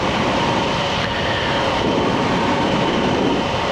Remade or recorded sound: remade